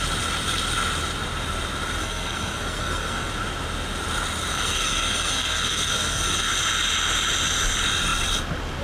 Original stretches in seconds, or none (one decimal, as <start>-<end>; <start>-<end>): 0.0-2.0; 3.3-4.5; 6.5-8.8